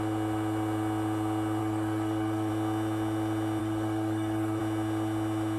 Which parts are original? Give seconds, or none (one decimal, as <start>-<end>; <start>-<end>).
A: 0.0-1.6; 2.5-3.6; 4.6-5.6